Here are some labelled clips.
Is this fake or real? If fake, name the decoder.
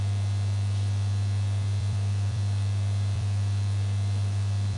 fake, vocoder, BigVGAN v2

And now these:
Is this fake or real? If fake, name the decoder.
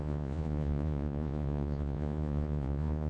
fake, vocoder, Vocos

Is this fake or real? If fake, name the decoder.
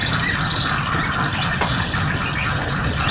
real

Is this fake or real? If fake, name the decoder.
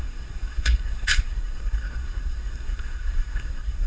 fake, codec, SNAC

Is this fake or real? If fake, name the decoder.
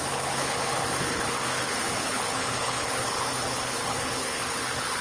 fake, codec, HILCodec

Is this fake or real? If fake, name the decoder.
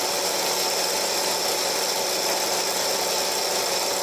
real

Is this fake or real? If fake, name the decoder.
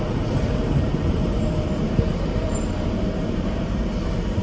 fake, vocoder, BigVGAN v2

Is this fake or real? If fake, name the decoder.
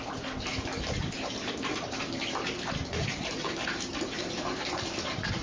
fake, vocoder, BigVGAN v2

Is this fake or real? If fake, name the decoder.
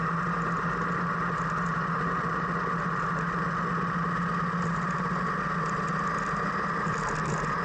real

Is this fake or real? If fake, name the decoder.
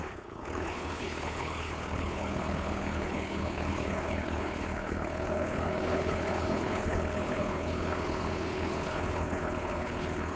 fake, codec, HILCodec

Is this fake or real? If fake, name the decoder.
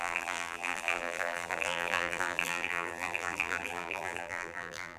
fake, vocoder, BigVGAN v2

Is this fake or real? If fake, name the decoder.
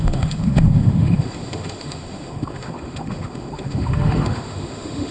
fake, autoencoder, DAC-VAE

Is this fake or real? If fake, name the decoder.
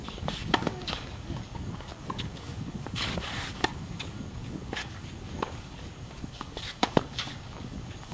fake, codec, DAC